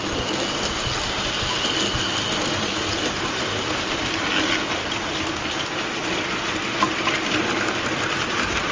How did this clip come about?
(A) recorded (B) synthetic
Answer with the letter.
A